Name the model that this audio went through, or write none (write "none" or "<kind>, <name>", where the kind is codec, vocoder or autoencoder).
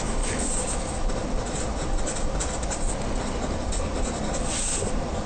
none